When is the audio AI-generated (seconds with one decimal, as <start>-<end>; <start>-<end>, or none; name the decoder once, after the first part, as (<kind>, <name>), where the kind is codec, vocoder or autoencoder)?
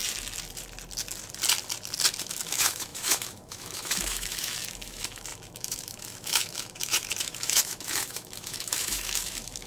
2.2-9.7 (autoencoder, DAC-VAE)